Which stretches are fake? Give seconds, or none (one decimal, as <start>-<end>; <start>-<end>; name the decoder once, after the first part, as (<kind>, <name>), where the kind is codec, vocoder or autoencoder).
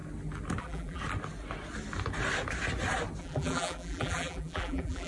0.6-1.0 (vocoder, BigVGAN v2); 3.2-5.1